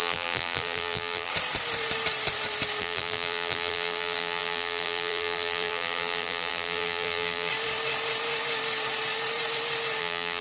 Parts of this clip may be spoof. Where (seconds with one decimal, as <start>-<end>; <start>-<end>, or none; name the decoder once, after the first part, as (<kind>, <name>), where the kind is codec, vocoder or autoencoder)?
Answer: 0.0-1.3 (vocoder, BigVGAN v2); 2.8-7.5; 10.0-10.4